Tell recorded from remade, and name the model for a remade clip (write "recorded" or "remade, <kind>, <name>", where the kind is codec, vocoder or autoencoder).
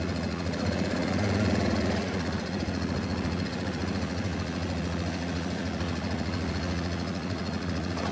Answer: remade, vocoder, Vocos